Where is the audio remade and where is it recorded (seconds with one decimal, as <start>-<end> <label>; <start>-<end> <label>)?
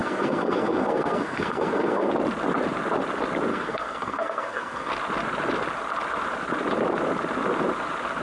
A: 0.0-2.1 remade; 2.1-3.5 recorded; 3.5-4.9 remade; 4.9-8.2 recorded